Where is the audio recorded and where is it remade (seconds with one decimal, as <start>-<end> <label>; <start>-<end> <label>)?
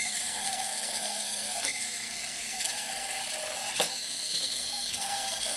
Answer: 0.0-3.2 remade; 3.2-3.9 recorded; 3.9-5.6 remade